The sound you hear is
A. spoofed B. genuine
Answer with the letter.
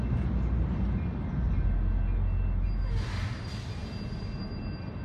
B